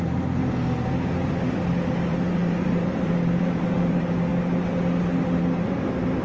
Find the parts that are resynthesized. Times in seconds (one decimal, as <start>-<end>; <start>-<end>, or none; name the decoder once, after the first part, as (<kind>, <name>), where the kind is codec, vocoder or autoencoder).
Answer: 0.0-4.3 (vocoder, BigVGAN v2)